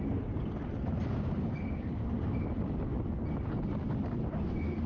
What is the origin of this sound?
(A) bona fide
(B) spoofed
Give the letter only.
A